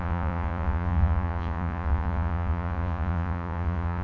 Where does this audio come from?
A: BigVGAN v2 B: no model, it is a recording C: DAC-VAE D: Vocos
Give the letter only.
D